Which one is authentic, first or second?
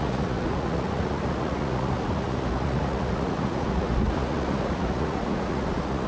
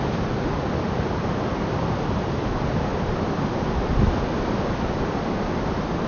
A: second